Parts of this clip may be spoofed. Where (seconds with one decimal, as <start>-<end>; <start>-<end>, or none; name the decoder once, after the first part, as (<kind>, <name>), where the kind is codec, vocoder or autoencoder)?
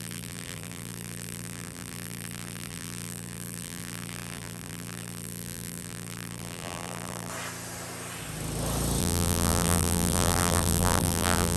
0.0-7.3 (vocoder, BigVGAN v2); 9.0-11.6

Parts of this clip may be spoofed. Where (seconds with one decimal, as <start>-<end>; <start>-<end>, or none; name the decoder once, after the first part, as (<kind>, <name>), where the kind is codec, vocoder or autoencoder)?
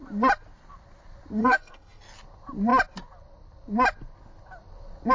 1.4-2.0 (codec, SNAC)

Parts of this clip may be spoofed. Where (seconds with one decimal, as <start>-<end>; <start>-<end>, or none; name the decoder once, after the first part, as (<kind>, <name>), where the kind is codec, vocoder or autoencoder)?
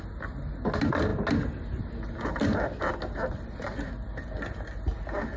none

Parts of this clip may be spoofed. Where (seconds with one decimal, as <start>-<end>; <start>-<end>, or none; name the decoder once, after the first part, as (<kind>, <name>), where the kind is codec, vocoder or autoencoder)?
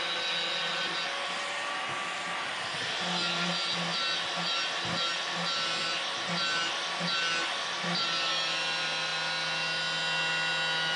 none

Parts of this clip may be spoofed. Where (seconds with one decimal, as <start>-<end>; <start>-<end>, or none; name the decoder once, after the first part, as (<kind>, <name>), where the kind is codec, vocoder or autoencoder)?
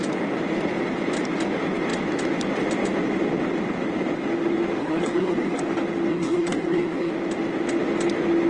4.8-5.6 (codec, SNAC); 6.1-7.1